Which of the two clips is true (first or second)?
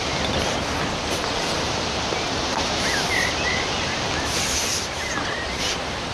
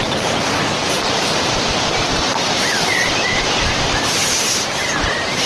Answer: first